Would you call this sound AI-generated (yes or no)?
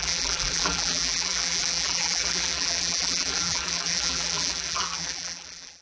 yes